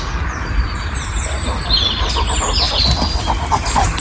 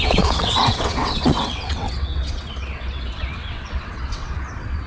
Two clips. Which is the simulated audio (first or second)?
second